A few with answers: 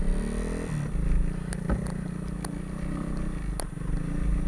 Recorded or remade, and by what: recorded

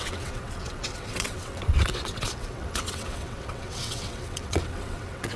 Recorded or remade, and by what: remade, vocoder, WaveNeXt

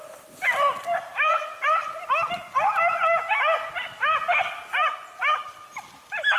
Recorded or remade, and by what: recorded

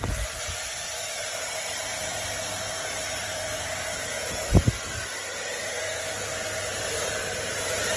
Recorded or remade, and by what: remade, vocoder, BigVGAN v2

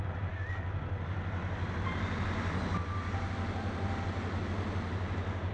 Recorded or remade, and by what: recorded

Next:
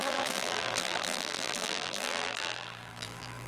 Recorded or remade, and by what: remade, vocoder, BigVGAN v2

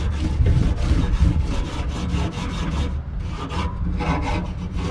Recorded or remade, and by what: recorded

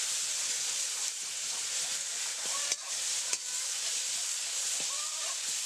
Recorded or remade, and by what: remade, vocoder, BigVGAN v2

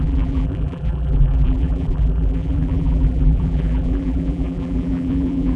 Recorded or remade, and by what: remade, vocoder, BigVGAN v2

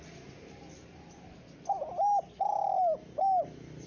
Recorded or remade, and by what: recorded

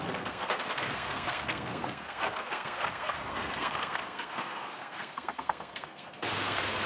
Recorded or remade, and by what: remade, codec, SNAC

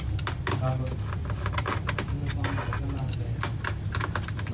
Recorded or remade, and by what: recorded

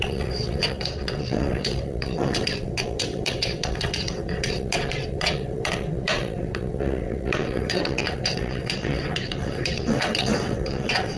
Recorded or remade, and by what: remade, vocoder, WaveNeXt